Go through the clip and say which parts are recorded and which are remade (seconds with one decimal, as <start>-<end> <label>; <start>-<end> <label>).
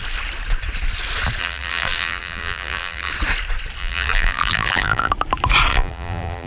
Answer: 0.0-1.4 recorded; 1.4-3.1 remade; 3.1-3.8 recorded; 3.8-5.1 remade; 5.1-5.7 recorded; 5.7-6.5 remade